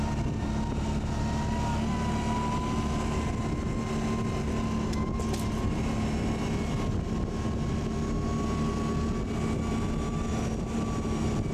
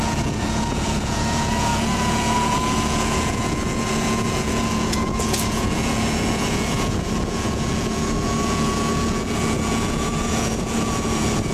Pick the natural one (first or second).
first